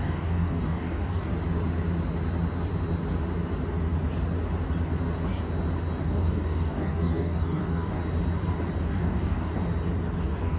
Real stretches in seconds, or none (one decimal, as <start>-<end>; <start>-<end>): 1.3-6.0; 8.0-8.8; 9.5-10.2